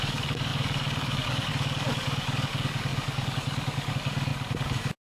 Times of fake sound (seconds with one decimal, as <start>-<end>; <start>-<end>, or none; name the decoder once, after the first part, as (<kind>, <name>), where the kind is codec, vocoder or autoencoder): 0.0-5.0 (codec, DAC)